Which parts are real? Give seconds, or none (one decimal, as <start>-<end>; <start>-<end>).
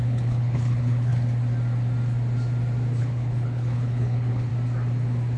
1.1-3.0; 4.5-5.4